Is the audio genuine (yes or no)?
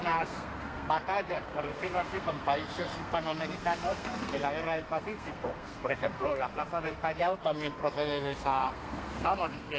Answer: no